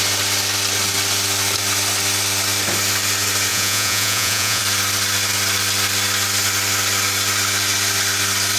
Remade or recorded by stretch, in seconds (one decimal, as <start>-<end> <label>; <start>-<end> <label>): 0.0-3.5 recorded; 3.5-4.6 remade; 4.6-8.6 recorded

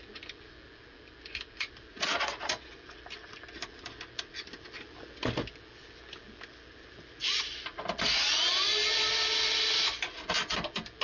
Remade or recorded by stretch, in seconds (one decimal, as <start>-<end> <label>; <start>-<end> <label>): 0.0-1.9 recorded; 1.9-2.5 remade; 2.5-11.0 recorded

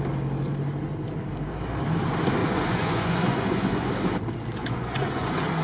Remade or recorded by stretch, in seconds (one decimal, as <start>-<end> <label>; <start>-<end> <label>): 0.0-2.4 recorded; 2.4-3.9 remade; 3.9-4.6 recorded; 4.6-5.6 remade

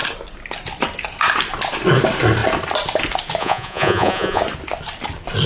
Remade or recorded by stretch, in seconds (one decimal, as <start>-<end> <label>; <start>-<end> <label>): 0.0-3.4 recorded; 3.4-4.4 remade; 4.4-5.5 recorded

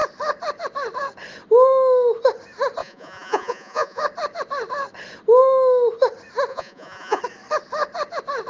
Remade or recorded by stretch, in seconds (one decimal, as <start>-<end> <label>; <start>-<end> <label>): 0.0-2.8 recorded; 2.8-4.0 remade; 4.0-6.5 recorded; 6.5-7.2 remade; 7.2-8.5 recorded